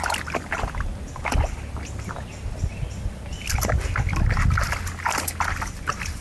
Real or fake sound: real